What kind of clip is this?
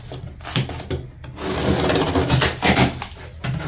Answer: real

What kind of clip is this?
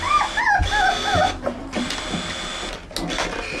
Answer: real